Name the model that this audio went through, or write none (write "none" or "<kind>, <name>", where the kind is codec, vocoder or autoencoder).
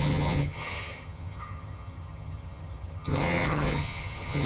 vocoder, HiFi-GAN